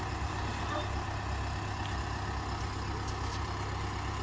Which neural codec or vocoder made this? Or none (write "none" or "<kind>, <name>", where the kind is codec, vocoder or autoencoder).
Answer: none